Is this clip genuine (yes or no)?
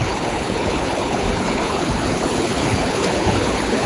no